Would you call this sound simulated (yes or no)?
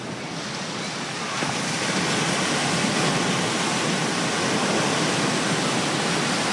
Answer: no